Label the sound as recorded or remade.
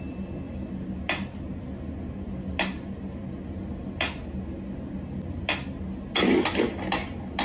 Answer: recorded